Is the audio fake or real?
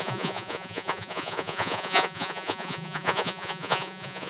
fake